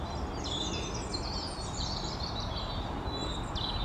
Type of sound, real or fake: real